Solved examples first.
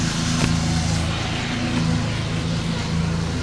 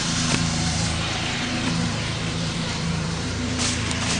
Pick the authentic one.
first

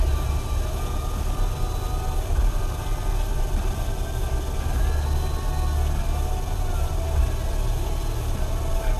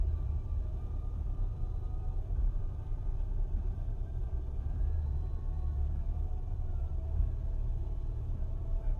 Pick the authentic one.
first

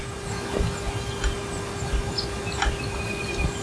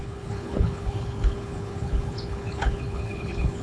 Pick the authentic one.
first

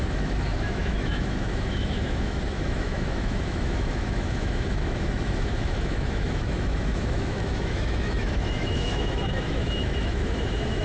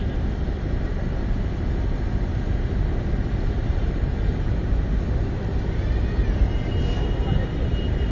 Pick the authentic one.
second